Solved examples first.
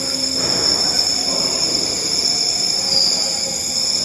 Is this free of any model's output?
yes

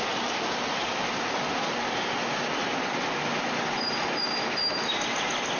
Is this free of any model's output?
yes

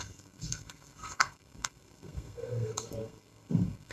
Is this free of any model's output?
no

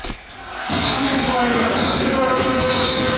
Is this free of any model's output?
no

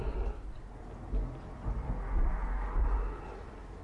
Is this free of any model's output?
yes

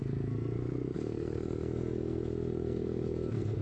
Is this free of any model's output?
no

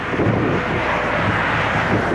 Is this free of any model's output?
yes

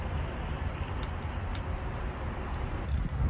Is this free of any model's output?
yes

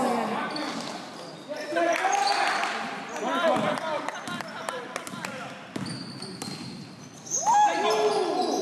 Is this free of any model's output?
yes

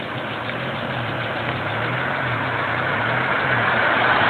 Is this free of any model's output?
yes